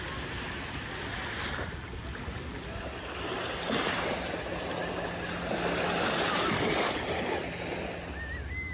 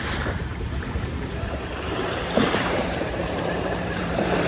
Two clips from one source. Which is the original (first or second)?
first